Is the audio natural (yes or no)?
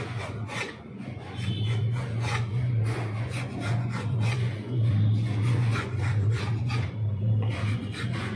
no